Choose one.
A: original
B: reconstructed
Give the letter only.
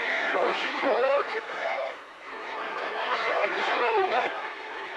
B